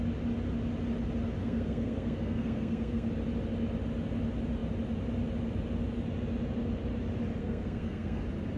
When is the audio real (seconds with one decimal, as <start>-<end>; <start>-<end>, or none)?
0.0-1.4; 3.1-7.4; 8.2-8.6